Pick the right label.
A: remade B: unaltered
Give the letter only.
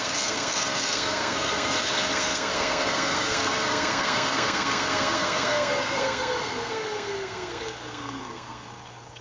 A